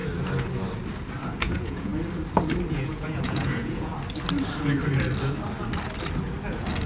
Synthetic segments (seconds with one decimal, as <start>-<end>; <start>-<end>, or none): 1.4-1.9; 2.7-3.9